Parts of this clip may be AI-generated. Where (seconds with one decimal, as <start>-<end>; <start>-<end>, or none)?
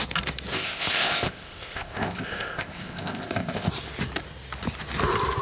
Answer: 0.5-3.7